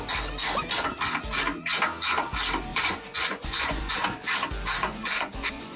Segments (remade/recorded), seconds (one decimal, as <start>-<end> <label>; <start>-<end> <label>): 0.0-2.7 recorded; 2.7-3.9 remade; 3.9-4.8 recorded; 4.8-5.8 remade